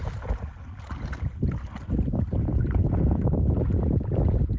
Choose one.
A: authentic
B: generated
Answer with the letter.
A